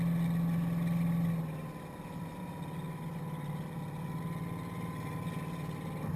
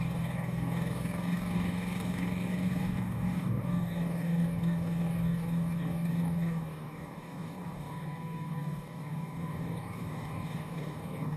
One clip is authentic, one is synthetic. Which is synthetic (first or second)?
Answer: second